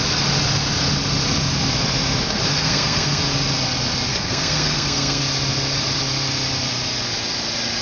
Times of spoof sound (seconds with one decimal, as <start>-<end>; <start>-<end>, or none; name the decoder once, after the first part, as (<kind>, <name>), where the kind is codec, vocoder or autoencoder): 2.5-3.2 (codec, SNAC); 4.1-5.2